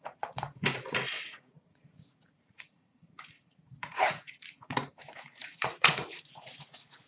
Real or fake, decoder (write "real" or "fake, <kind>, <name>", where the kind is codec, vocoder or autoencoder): fake, vocoder, Vocos